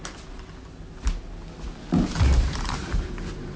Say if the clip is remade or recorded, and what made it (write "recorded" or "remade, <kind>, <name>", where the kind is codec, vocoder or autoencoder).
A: recorded